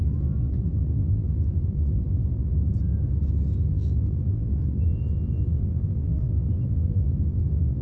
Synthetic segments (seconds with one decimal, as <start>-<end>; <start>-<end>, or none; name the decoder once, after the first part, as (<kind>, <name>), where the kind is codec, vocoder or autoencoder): 0.0-2.5 (vocoder, BigVGAN v2); 3.7-7.8